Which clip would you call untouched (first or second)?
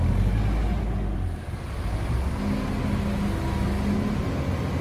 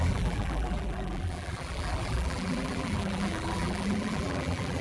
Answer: first